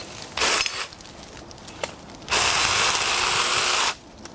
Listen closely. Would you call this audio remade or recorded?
recorded